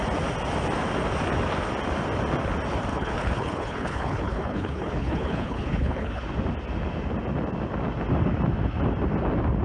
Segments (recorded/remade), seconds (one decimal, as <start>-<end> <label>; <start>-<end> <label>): 0.0-2.9 recorded; 2.9-6.2 remade; 6.2-9.6 recorded